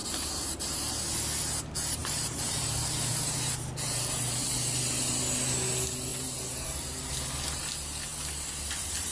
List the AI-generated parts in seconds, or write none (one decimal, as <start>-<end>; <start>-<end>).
0.0-0.9; 2.0-3.5; 6.1-7.1